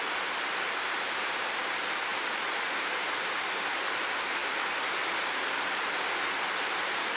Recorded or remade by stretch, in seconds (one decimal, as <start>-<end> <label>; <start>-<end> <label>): 0.0-4.4 recorded; 4.4-5.6 remade; 5.6-7.2 recorded